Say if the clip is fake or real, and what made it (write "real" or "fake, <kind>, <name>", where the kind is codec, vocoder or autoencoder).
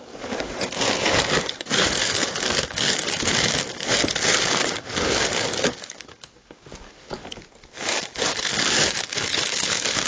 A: fake, codec, DAC